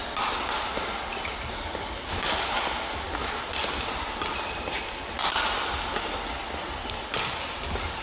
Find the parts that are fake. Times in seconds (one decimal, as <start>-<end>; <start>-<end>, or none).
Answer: none